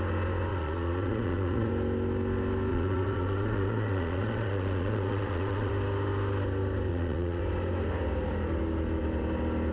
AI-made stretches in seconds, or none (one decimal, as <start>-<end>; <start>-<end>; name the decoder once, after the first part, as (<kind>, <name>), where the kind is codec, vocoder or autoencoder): 0.5-1.7 (vocoder, Vocos); 2.7-5.7; 6.9-7.4

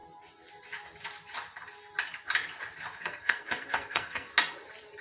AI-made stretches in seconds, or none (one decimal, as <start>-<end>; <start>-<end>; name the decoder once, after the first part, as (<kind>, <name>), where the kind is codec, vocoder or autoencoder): 3.0-4.3 (codec, SNAC)

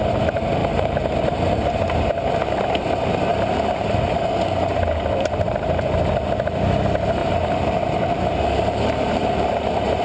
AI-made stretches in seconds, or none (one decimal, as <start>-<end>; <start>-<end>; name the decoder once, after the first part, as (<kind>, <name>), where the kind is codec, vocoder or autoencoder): 0.6-1.5 (vocoder, BigVGAN v2); 3.3-4.0; 7.2-10.0

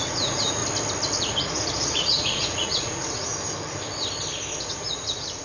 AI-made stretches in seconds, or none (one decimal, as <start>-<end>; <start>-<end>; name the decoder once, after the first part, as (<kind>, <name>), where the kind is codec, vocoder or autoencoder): 0.0-0.6 (vocoder, Vocos); 1.2-3.3; 4.6-5.4